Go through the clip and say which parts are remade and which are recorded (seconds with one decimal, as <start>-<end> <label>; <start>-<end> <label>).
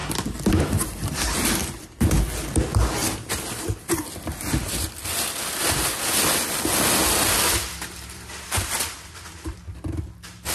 0.0-3.0 recorded; 3.0-5.7 remade; 5.7-7.0 recorded; 7.0-10.0 remade; 10.0-10.5 recorded